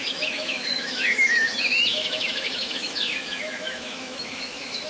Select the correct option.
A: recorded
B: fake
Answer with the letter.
B